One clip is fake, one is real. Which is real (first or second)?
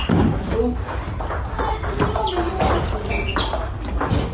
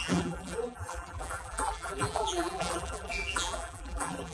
first